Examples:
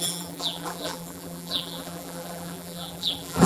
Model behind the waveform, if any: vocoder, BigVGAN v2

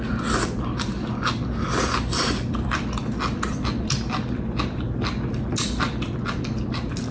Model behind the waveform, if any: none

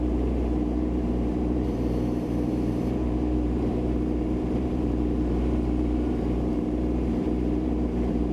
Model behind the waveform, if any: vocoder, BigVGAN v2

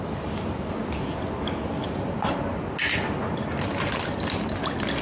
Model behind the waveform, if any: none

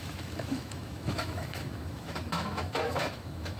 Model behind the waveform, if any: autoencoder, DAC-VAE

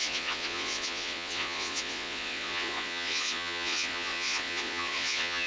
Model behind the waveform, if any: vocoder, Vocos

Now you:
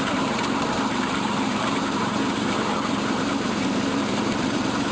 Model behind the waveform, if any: vocoder, BigVGAN v2